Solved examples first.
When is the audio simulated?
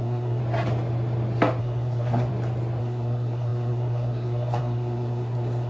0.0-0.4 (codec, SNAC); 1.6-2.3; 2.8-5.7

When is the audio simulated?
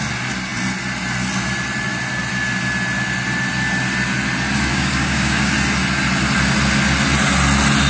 4.7-5.5 (codec, DAC)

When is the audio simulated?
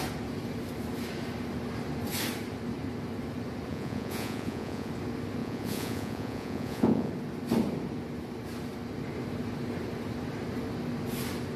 3.7-4.9 (vocoder, Vocos); 5.4-7.1